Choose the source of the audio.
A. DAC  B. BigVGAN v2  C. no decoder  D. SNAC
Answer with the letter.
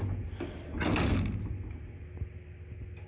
C